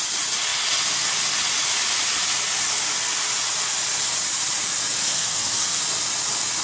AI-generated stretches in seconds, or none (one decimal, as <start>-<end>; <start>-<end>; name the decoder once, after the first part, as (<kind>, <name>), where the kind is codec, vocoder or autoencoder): 5.0-5.8 (codec, SNAC)